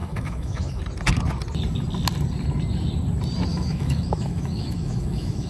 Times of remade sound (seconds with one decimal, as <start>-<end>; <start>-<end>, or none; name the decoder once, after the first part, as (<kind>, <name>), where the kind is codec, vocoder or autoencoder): 0.0-0.8 (autoencoder, DAC-VAE); 3.5-5.5